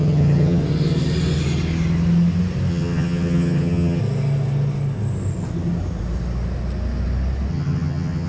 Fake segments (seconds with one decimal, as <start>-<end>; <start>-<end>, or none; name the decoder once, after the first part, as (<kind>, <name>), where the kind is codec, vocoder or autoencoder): 0.0-0.6 (vocoder, HiFi-GAN); 2.7-4.0; 7.5-8.3